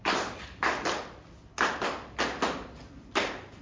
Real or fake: real